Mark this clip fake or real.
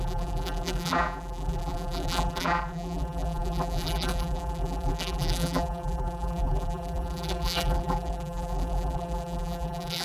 fake